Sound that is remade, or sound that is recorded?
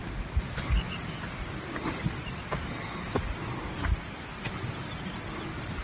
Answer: recorded